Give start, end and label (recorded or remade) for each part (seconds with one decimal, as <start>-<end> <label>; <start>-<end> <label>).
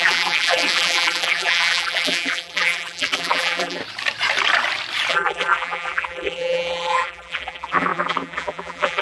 0.0-3.8 remade; 3.8-5.1 recorded; 5.1-9.0 remade